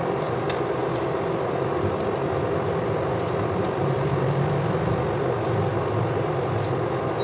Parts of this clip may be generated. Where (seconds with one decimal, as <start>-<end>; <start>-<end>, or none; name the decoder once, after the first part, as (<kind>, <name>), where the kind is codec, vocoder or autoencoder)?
none